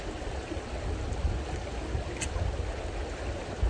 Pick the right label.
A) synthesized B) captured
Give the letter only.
B